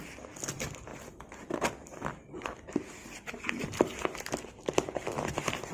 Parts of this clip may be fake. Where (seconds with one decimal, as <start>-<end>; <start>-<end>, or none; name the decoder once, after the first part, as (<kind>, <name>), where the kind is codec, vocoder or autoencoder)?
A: none